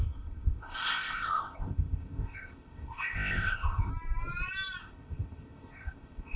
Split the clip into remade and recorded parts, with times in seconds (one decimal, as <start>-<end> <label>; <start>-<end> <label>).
0.0-3.9 remade; 3.9-4.8 recorded; 4.8-6.4 remade